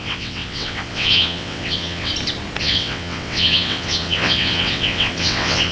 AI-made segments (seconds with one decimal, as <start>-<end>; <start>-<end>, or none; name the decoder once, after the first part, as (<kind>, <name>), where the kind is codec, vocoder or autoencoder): 0.0-2.1 (vocoder, WaveNeXt); 2.6-5.7